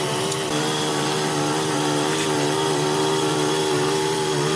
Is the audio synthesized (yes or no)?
yes